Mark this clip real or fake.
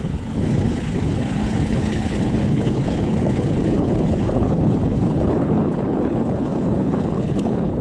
fake